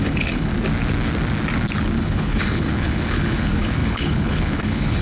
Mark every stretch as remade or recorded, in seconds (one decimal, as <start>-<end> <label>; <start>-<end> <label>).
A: 0.0-0.5 remade; 0.5-2.0 recorded; 2.0-5.0 remade